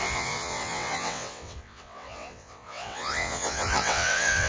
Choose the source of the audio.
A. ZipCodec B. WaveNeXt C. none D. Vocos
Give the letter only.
B